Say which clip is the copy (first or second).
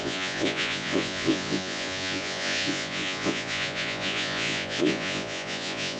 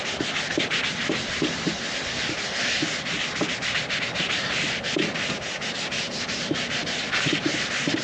first